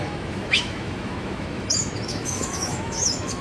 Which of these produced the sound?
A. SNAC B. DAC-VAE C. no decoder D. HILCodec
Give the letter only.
B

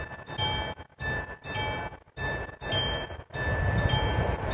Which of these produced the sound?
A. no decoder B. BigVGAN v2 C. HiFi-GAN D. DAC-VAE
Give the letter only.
A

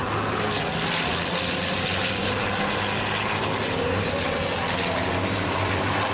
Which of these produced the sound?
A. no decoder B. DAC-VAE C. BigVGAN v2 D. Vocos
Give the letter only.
A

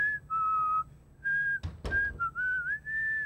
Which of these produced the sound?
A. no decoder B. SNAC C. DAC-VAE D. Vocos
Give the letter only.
A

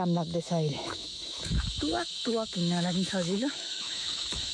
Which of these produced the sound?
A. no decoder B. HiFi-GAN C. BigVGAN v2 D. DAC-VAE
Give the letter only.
D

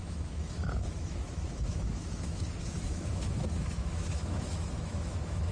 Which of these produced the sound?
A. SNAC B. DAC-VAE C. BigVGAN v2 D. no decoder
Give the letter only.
B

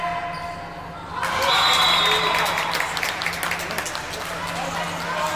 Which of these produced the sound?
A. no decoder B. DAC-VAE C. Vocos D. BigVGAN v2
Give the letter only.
A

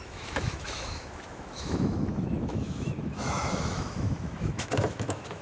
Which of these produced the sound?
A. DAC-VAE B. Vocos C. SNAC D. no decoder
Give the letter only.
A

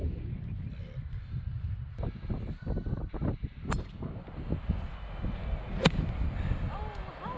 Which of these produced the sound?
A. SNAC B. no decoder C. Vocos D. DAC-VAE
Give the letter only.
B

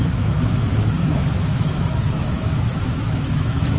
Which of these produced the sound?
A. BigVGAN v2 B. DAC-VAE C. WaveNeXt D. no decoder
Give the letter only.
B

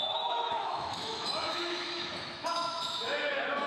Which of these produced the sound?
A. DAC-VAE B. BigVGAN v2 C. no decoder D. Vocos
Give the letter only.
A